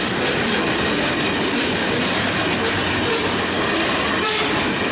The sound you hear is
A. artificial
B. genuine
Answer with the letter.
B